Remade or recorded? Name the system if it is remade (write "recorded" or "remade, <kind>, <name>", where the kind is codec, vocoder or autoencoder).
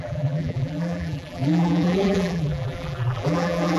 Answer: remade, vocoder, BigVGAN v2